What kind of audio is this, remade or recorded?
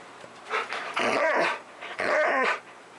remade